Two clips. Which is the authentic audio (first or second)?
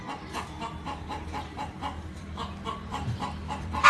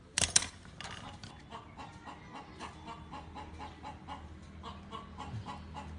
second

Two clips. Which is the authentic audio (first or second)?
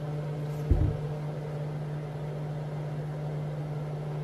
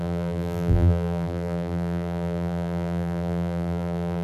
first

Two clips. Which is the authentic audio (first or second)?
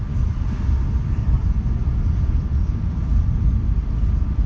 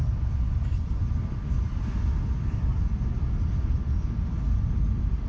second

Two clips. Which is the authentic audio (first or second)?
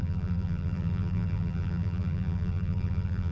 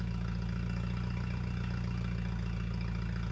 second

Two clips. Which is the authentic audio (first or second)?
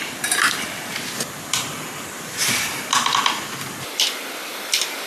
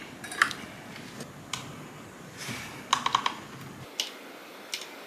second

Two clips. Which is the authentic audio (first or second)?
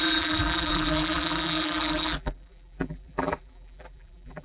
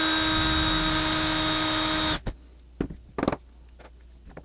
second